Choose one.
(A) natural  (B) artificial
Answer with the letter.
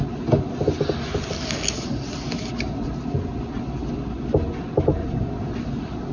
A